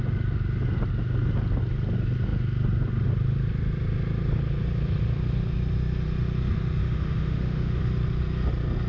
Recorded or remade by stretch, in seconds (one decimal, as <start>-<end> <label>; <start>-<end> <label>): 0.0-6.8 recorded; 6.8-7.8 remade; 7.8-8.9 recorded